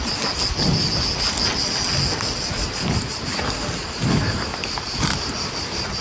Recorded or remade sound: recorded